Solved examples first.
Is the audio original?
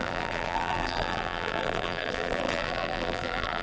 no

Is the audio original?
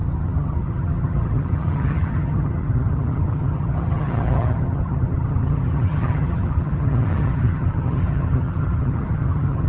no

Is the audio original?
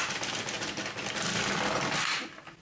yes